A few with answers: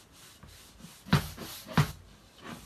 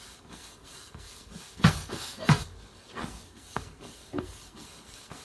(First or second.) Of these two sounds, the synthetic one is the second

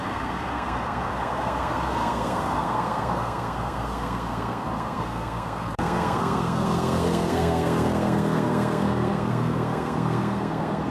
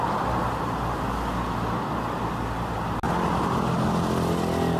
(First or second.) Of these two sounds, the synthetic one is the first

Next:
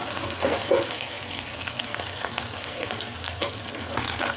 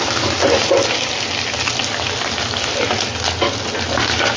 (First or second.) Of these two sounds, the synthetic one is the first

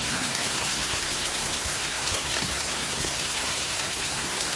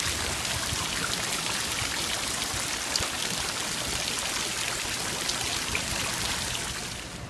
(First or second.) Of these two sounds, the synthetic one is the first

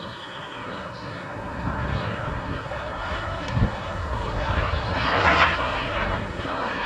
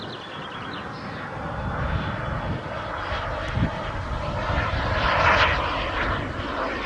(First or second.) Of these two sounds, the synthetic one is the first